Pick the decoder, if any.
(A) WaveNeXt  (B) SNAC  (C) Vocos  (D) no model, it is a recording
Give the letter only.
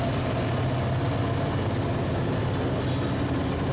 D